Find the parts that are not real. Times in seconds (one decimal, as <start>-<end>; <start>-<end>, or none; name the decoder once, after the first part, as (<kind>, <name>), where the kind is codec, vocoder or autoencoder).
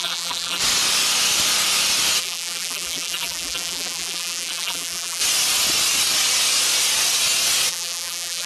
0.0-0.6 (vocoder, BigVGAN v2); 2.2-5.2; 7.7-8.5